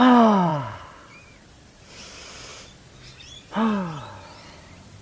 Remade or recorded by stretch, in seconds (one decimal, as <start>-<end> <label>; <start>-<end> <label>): 0.0-0.5 recorded; 0.5-1.9 remade; 1.9-5.0 recorded